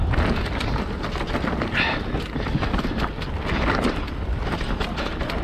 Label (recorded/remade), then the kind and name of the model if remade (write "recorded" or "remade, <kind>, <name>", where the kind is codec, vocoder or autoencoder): recorded